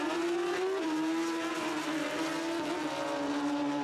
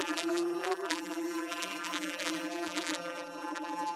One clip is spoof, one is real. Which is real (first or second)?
first